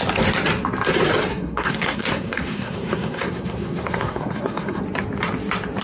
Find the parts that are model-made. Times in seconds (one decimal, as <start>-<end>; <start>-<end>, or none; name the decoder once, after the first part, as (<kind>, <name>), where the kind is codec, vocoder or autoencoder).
1.3-4.8 (codec, SNAC)